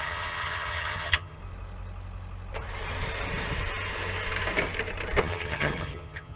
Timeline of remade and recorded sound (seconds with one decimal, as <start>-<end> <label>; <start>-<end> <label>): 0.0-1.4 remade; 1.4-5.2 recorded; 5.2-6.4 remade

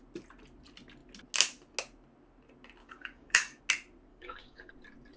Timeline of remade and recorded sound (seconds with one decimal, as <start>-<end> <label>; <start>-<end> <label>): 0.0-2.8 recorded; 2.8-3.6 remade; 3.6-4.1 recorded; 4.1-4.7 remade; 4.7-5.2 recorded